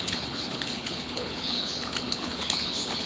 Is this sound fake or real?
fake